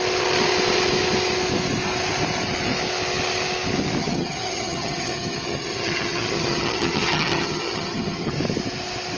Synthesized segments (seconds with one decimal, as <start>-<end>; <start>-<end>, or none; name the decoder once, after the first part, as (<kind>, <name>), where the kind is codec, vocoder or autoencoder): 4.0-8.3 (vocoder, HiFi-GAN)